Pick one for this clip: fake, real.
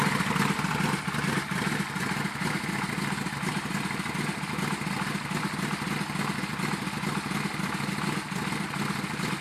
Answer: real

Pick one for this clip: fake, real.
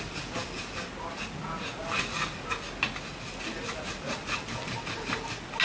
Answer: real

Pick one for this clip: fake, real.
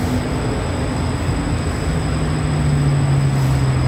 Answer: real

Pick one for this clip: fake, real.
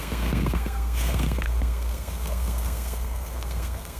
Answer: fake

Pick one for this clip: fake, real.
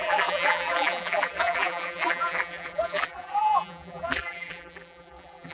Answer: fake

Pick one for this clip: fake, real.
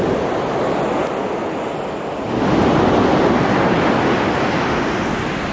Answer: real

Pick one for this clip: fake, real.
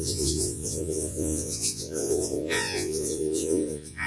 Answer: fake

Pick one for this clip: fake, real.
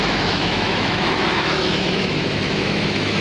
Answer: fake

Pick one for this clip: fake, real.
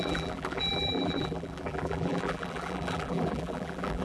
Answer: fake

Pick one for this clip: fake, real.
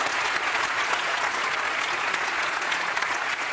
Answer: fake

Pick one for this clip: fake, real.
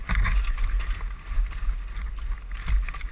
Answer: real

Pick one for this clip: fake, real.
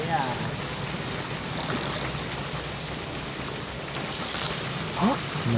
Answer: real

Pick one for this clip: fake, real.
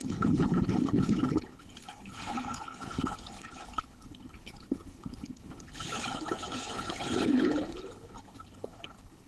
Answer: fake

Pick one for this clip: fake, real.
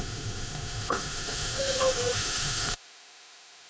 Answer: fake